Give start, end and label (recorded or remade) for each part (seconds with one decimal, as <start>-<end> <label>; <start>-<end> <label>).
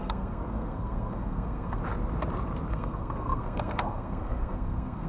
0.0-1.8 remade; 1.8-2.7 recorded; 2.7-5.1 remade